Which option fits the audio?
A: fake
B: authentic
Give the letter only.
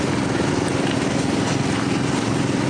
B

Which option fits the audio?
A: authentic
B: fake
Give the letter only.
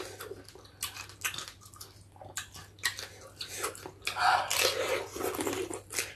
A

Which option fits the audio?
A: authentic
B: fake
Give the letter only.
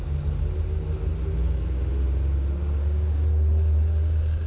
A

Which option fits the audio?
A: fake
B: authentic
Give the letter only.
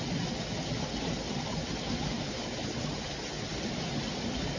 B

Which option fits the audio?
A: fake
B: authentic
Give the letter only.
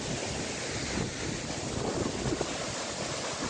B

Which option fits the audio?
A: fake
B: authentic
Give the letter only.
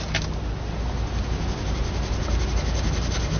B